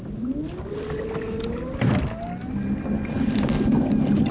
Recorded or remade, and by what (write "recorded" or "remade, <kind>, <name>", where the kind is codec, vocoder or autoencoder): recorded